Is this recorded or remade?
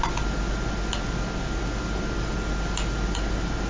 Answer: recorded